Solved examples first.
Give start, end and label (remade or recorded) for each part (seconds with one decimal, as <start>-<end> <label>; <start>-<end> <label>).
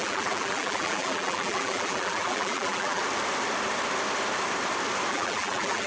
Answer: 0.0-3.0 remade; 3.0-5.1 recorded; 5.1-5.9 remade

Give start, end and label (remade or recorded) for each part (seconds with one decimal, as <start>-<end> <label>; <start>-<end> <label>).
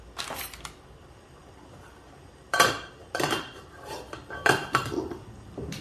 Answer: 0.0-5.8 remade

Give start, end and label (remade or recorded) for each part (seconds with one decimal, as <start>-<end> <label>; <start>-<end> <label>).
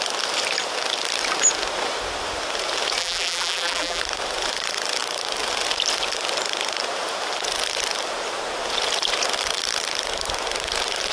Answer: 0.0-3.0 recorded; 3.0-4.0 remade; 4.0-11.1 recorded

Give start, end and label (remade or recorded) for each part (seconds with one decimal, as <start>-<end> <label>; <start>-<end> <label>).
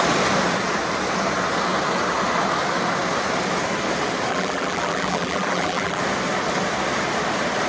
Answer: 0.0-4.3 recorded; 4.3-6.0 remade; 6.0-7.7 recorded